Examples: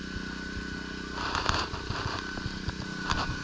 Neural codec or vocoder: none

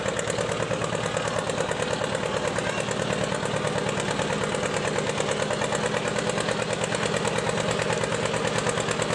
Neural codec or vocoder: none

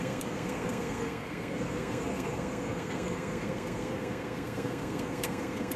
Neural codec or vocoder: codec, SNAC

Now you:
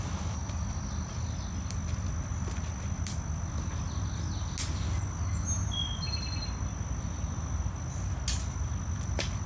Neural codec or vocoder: none